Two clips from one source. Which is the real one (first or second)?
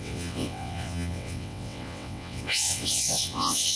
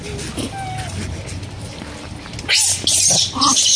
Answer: second